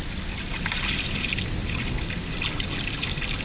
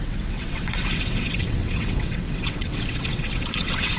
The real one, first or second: first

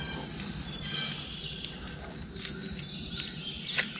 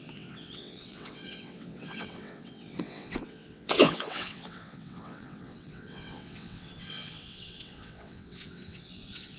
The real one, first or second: first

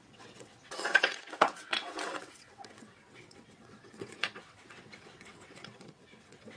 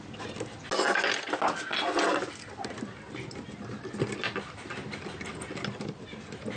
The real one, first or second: second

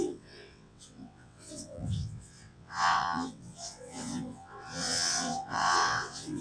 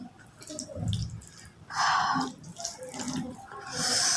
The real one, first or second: second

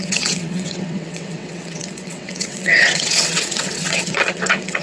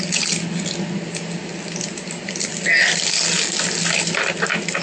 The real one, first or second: second